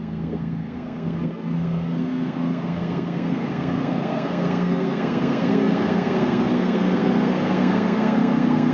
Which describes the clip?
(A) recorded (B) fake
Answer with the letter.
B